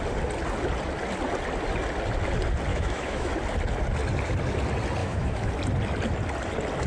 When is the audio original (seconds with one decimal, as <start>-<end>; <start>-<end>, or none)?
0.0-2.7; 3.3-5.0; 5.5-6.9